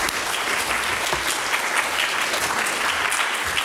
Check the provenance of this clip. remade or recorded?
recorded